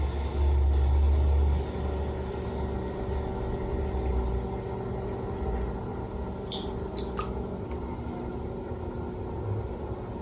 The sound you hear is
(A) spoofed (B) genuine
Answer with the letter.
B